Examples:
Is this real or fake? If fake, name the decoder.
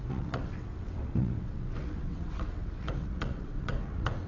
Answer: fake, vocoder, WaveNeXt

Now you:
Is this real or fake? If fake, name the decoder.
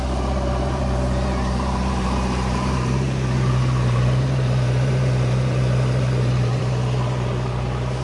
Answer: fake, vocoder, BigVGAN v2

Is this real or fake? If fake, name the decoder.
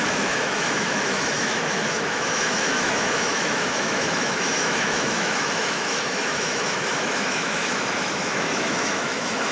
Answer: fake, autoencoder, DAC-VAE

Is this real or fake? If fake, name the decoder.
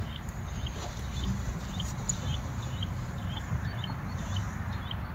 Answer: fake, vocoder, BigVGAN v2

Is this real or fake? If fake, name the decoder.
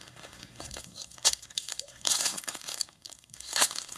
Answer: fake, codec, SNAC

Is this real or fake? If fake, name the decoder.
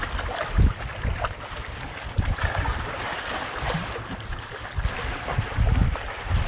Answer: real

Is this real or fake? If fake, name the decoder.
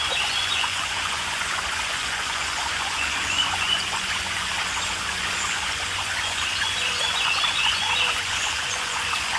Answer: fake, vocoder, Vocos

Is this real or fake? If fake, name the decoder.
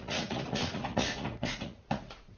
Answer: fake, vocoder, Vocos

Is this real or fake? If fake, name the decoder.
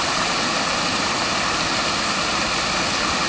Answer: real